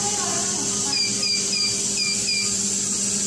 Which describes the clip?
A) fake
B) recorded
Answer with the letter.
B